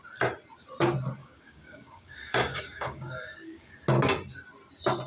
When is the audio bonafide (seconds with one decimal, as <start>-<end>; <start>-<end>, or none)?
0.0-1.2; 3.7-5.1